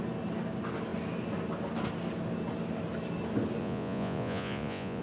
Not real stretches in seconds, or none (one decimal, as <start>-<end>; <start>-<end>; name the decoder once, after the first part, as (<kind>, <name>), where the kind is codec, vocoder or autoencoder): 3.6-5.0 (vocoder, Vocos)